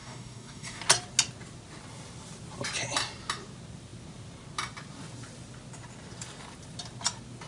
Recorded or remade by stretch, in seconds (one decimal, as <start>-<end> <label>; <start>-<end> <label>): 0.0-0.8 remade; 0.8-7.5 recorded

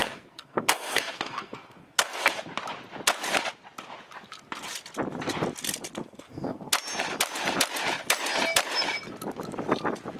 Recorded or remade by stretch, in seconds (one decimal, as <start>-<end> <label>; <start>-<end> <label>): 0.0-2.4 remade; 2.4-6.0 recorded; 6.0-6.7 remade; 6.7-10.2 recorded

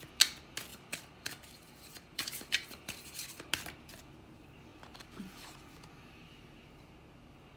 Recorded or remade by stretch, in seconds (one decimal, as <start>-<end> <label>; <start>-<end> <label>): 0.0-0.7 recorded; 0.7-3.5 remade; 3.5-7.6 recorded